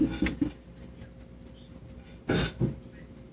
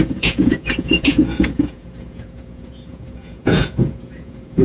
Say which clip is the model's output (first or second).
second